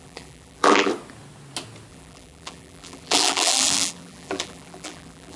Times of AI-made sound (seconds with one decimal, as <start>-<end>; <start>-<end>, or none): 0.0-0.9; 1.9-5.4